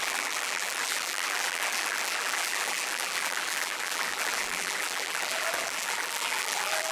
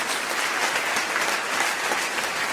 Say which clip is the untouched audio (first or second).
second